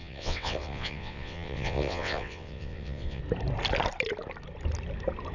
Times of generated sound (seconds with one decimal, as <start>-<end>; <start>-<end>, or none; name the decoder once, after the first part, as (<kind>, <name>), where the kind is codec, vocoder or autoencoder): 0.0-3.2 (vocoder, WaveNeXt)